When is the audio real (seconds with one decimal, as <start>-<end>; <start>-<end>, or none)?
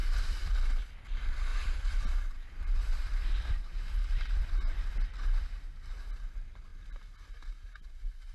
0.9-1.5; 4.9-8.3